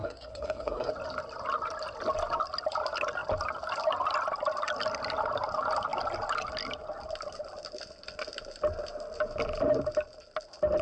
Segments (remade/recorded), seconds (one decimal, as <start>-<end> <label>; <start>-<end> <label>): 0.0-0.9 remade; 0.9-10.8 recorded